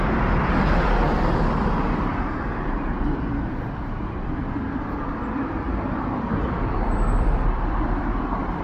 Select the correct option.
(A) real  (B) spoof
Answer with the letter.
B